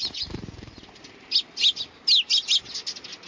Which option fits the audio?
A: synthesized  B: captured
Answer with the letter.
B